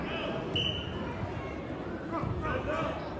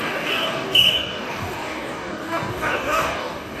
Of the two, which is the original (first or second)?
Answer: first